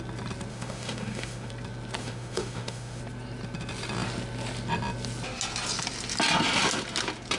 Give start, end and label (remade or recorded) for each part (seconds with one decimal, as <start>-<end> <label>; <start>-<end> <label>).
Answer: 0.0-0.5 recorded; 0.5-1.5 remade; 1.5-2.0 recorded; 2.0-3.0 remade; 3.0-7.4 recorded